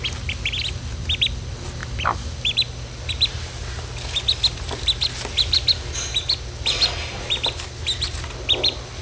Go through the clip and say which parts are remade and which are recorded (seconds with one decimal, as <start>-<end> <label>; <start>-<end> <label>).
0.0-9.0 recorded